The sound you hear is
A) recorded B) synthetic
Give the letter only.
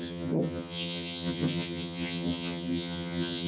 B